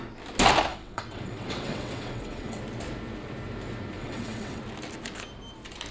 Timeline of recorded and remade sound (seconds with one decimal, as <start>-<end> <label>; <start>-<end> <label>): 0.0-0.7 recorded; 0.7-2.6 remade; 2.6-4.0 recorded; 4.0-4.6 remade; 4.6-5.9 recorded